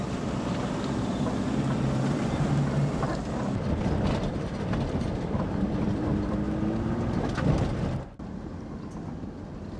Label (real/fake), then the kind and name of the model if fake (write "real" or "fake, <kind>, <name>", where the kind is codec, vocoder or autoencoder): fake, vocoder, BigVGAN v2